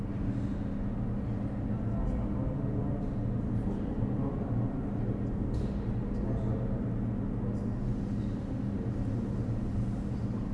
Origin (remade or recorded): recorded